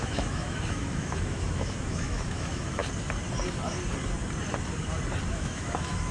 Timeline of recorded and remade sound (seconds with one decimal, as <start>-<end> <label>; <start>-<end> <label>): 0.0-2.8 remade; 2.8-5.3 recorded; 5.3-6.1 remade